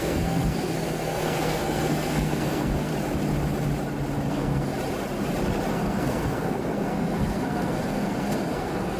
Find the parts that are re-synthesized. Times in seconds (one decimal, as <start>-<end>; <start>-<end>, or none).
0.0-2.9; 4.3-4.7; 5.7-9.0

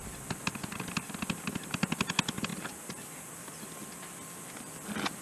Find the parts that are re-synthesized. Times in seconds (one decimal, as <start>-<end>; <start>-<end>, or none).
none